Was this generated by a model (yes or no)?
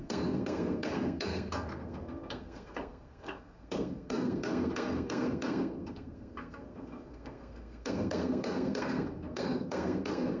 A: yes